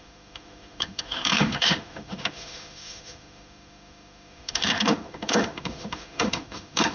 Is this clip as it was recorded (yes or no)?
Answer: no